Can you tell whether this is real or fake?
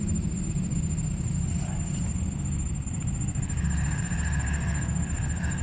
real